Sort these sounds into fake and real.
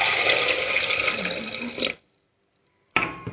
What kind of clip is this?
fake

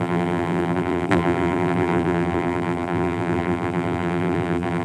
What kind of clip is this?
fake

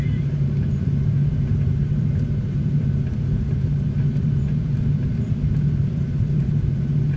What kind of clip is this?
fake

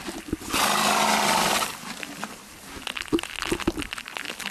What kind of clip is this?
real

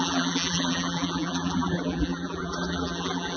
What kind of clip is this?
fake